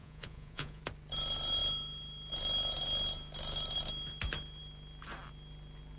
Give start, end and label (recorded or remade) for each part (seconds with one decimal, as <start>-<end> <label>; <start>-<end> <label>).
0.0-0.8 remade; 0.8-6.0 recorded